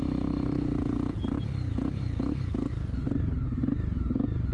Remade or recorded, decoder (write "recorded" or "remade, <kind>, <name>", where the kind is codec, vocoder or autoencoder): recorded